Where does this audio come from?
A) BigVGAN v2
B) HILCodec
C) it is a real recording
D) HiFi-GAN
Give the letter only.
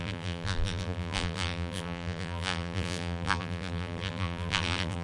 A